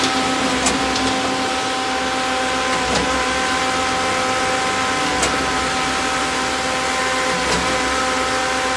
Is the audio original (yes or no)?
yes